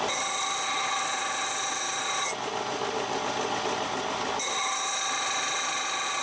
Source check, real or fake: real